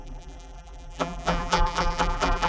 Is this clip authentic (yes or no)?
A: no